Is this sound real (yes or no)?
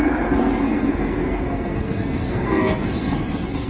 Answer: no